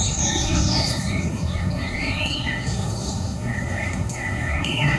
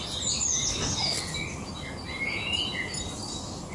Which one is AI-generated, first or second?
first